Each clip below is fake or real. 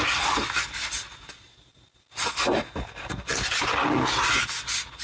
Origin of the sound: real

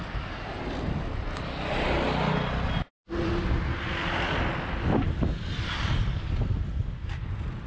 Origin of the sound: real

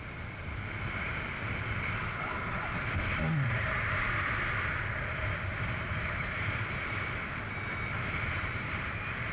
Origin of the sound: fake